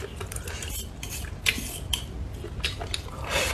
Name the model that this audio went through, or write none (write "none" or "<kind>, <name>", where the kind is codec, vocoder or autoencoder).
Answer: none